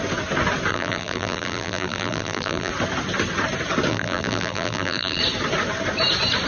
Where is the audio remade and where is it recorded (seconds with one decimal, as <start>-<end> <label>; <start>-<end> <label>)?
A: 0.0-0.7 recorded; 0.7-2.7 remade; 2.7-3.9 recorded; 3.9-5.2 remade; 5.2-6.5 recorded